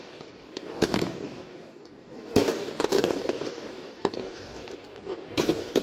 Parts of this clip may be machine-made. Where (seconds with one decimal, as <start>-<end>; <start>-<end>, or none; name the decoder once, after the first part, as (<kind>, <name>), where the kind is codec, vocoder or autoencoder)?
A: 0.0-5.8 (codec, DAC)